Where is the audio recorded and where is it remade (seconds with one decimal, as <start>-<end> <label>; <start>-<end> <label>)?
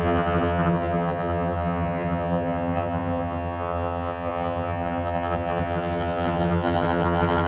0.0-7.5 remade